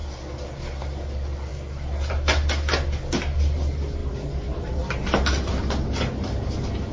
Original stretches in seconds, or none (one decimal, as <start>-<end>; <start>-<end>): 0.0-6.9